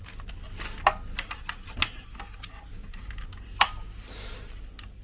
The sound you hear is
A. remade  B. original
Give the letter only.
B